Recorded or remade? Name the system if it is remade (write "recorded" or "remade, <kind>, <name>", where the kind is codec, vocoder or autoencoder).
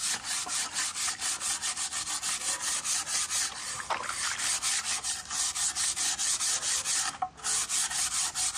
recorded